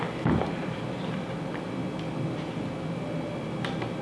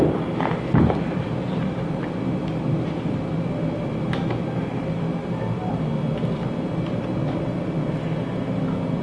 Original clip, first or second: first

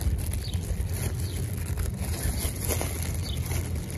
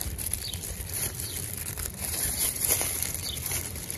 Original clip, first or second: first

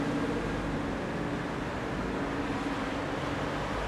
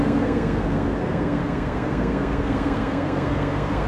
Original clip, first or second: first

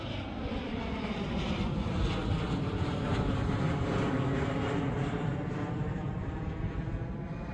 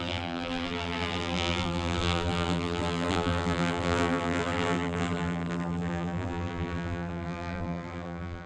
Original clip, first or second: first